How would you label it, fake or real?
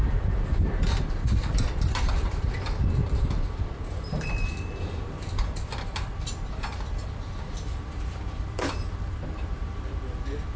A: fake